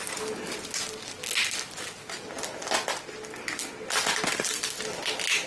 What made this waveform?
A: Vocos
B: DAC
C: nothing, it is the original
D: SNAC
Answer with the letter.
C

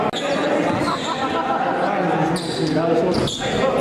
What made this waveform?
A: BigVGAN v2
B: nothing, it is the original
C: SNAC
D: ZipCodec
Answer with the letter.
B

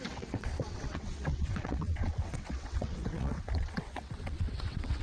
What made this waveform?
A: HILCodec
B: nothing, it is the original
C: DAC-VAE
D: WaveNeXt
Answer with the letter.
D